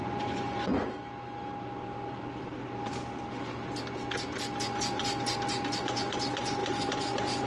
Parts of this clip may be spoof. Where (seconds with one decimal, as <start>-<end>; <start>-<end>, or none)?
0.0-0.7; 4.6-5.0; 5.8-7.5